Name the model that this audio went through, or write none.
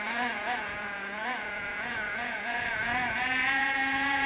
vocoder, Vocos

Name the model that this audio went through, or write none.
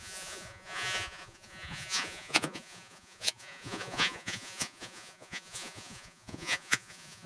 vocoder, Vocos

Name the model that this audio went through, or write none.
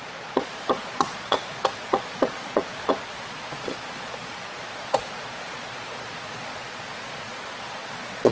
vocoder, Vocos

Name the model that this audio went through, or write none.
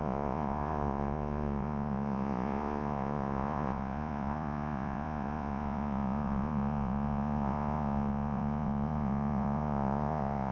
vocoder, Vocos